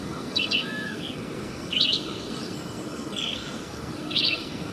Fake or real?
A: fake